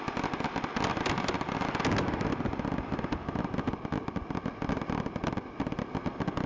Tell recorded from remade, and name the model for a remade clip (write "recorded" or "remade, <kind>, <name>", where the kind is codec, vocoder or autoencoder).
recorded